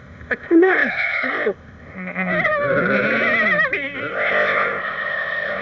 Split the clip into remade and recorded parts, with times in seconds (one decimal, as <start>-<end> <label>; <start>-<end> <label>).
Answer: 0.0-2.3 remade; 2.3-4.1 recorded; 4.1-5.6 remade